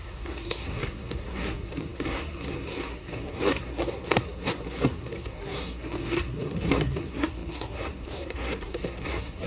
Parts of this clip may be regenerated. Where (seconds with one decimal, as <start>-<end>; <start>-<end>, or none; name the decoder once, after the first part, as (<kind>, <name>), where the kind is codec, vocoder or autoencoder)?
0.0-9.5 (codec, SNAC)